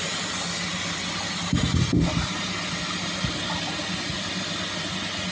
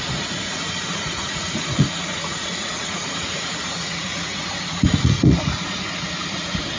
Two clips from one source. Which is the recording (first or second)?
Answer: first